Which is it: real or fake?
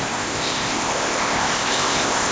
fake